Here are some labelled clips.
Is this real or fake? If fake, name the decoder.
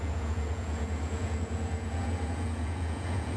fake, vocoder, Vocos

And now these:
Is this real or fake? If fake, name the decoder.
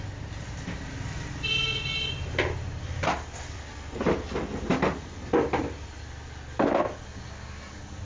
real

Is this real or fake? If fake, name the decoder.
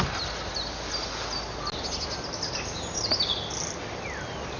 real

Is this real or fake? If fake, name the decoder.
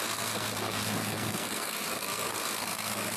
fake, codec, SNAC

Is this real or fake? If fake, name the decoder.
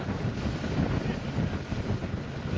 real